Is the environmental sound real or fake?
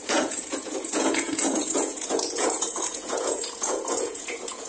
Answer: fake